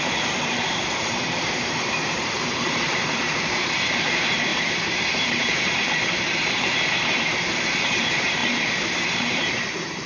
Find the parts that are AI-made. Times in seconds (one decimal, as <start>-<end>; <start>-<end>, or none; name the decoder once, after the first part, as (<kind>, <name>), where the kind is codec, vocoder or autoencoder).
0.0-10.1 (vocoder, BigVGAN v2)